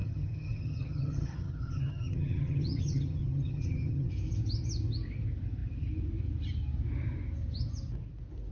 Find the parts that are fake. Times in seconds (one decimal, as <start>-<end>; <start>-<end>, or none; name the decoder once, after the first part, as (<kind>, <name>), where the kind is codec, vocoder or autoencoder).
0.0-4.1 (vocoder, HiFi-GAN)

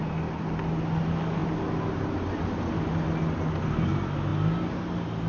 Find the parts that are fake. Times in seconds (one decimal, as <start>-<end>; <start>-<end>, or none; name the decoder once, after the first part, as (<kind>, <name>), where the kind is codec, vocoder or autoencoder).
none

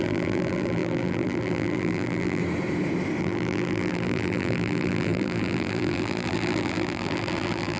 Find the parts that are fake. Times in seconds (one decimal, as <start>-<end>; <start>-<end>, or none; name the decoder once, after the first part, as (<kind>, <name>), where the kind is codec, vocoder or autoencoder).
0.0-2.4 (vocoder, BigVGAN v2); 3.2-7.8

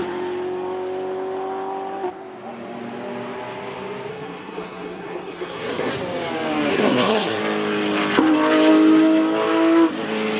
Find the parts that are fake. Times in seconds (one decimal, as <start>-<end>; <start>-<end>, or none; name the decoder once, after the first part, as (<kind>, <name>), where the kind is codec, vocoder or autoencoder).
4.1-5.9 (codec, SNAC); 6.7-7.4